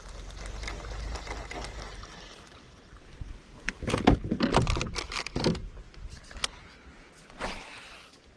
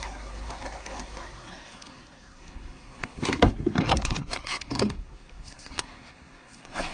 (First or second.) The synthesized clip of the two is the second